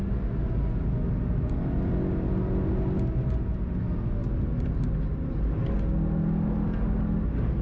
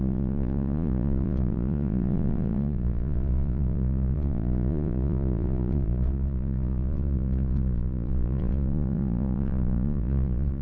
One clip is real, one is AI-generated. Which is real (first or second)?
first